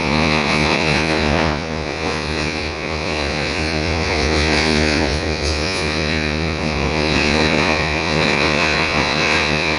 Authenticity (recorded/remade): remade